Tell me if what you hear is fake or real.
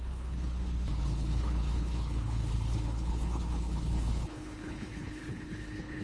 fake